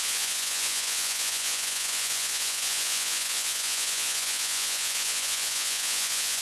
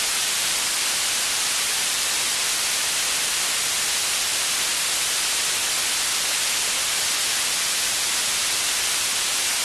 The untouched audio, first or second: second